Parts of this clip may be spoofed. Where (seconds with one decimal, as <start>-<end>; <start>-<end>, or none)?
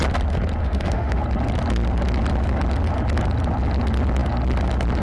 0.6-1.2